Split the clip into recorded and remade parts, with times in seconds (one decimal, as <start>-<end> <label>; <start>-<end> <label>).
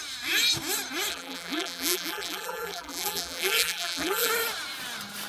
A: 0.0-1.1 recorded; 1.1-4.3 remade; 4.3-5.3 recorded